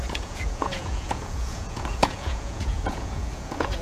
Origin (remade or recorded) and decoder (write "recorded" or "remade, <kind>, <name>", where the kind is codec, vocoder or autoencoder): remade, vocoder, Vocos